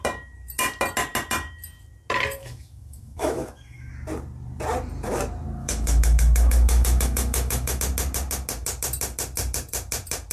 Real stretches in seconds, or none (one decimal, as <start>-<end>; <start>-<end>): 0.0-2.4; 3.9-5.6; 7.8-10.3